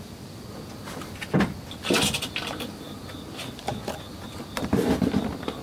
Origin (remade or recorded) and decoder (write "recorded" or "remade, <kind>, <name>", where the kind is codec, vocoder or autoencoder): recorded